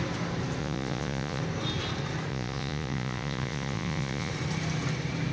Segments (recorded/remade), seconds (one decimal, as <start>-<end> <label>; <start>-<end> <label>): 0.0-0.6 recorded; 0.6-1.4 remade; 1.4-2.3 recorded; 2.3-4.3 remade; 4.3-5.3 recorded